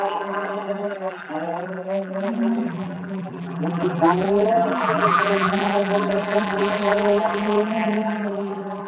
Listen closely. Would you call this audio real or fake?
fake